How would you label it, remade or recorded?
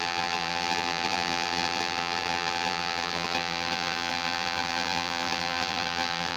remade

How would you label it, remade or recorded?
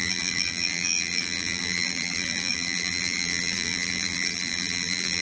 remade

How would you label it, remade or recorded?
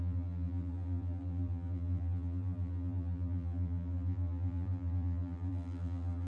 remade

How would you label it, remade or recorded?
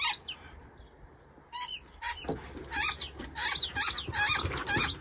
recorded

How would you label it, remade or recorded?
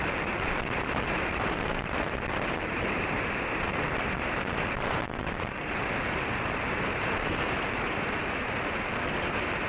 remade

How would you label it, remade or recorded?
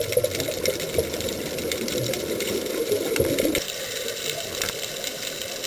remade